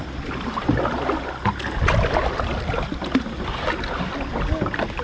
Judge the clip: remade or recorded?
recorded